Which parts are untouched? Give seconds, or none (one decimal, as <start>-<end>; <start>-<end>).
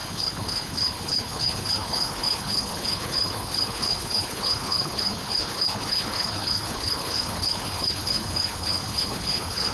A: none